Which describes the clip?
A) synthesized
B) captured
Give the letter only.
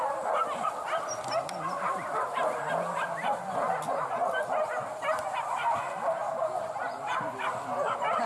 B